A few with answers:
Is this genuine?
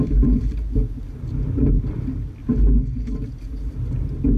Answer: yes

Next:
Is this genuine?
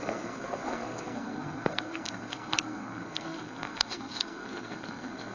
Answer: no